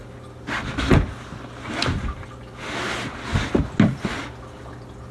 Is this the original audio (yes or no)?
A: yes